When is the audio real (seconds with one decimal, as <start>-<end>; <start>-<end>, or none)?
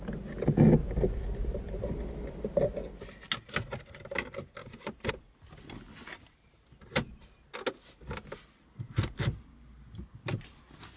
0.0-4.6; 5.1-6.1; 7.5-11.0